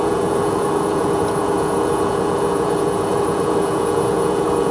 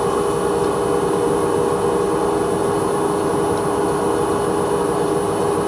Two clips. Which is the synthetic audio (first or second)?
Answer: first